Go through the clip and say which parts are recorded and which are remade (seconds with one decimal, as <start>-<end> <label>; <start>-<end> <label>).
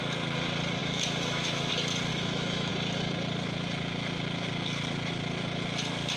0.0-0.8 recorded; 0.8-1.7 remade; 1.7-2.1 recorded; 2.1-2.7 remade; 2.7-6.2 recorded